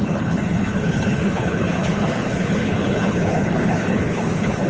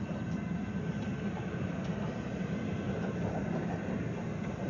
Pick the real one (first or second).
second